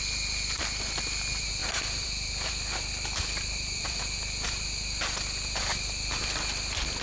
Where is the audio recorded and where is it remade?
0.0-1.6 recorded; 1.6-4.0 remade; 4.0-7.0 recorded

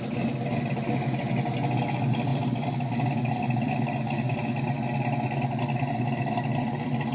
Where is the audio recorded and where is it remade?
0.0-7.1 recorded

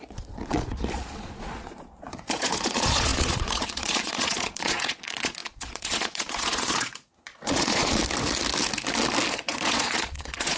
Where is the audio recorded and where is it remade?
0.0-8.0 remade; 8.0-9.3 recorded; 9.3-10.6 remade

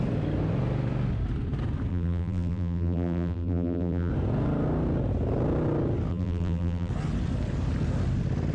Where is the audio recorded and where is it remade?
0.0-1.9 recorded; 1.9-4.1 remade; 4.1-6.1 recorded; 6.1-6.9 remade; 6.9-8.5 recorded

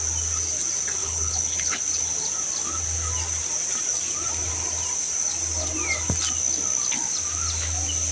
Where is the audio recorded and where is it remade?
0.0-1.0 recorded; 1.0-1.8 remade; 1.8-8.1 recorded

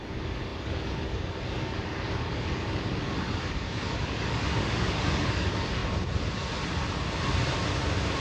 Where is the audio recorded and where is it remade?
0.0-5.8 remade; 5.8-8.2 recorded

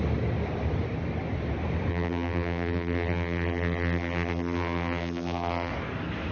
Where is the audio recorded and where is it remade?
0.0-1.9 recorded; 1.9-5.7 remade; 5.7-6.3 recorded

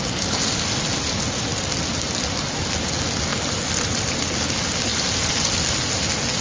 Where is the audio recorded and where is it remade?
0.0-6.4 recorded